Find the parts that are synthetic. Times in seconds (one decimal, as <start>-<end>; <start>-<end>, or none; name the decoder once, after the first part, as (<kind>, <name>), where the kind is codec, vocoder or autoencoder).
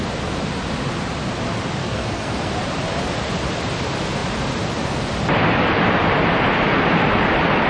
1.8-2.5 (codec, SNAC)